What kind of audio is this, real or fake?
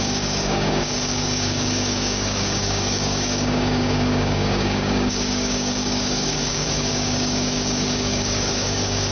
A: fake